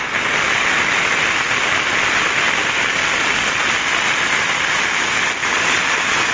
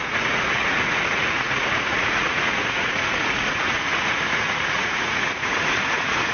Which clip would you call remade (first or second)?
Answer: second